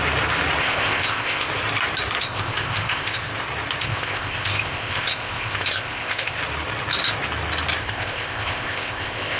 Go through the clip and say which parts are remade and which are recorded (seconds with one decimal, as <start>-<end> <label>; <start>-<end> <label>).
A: 0.0-0.6 recorded; 0.6-1.5 remade; 1.5-2.2 recorded; 2.2-3.3 remade; 3.3-3.8 recorded; 3.8-6.4 remade; 6.4-7.8 recorded; 7.8-9.4 remade